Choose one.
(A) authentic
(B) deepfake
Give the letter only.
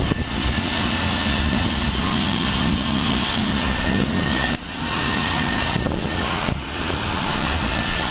B